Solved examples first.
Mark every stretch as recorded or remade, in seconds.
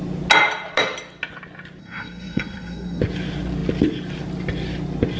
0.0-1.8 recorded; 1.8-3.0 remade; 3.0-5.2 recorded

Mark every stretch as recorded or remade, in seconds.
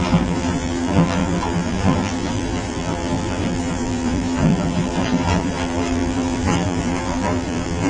0.0-7.9 remade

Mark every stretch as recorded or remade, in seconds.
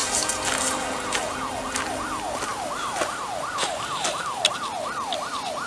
0.0-5.7 recorded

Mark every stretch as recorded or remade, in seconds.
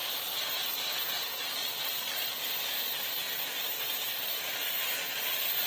0.0-0.6 remade; 0.6-1.6 recorded; 1.6-4.7 remade; 4.7-5.7 recorded